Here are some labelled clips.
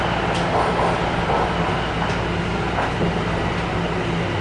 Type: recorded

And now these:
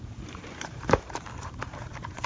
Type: remade